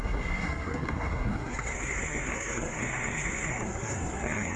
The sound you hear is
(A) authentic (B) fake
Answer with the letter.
B